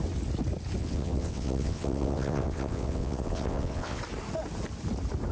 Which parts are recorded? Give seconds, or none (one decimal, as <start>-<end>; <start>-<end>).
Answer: 0.0-0.8; 4.0-5.3